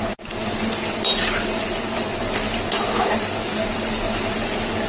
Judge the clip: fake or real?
real